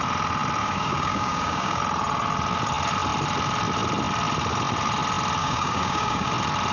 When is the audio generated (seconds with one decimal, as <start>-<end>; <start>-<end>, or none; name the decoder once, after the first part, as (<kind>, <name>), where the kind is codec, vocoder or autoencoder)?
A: 0.6-1.8 (codec, DAC); 5.4-6.3